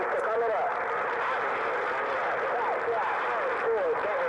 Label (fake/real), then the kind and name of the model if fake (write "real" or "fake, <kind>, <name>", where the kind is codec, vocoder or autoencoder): real